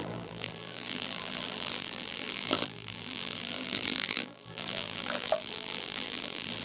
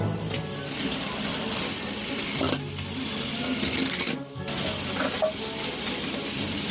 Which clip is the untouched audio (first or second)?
second